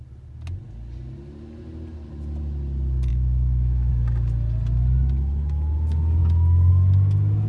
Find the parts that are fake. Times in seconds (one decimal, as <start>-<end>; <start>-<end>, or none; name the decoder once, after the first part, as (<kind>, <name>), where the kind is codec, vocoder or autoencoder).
3.1-3.9 (autoencoder, DAC-VAE)